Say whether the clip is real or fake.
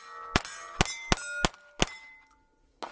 real